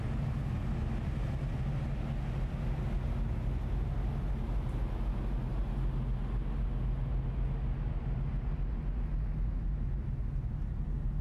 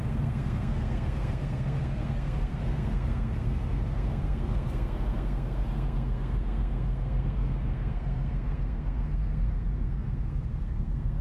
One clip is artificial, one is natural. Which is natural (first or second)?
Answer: first